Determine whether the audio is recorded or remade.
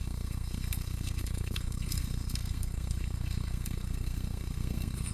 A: remade